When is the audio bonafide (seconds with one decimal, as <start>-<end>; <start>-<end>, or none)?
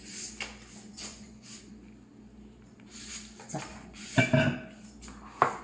0.0-0.9; 1.6-3.7; 4.2-5.6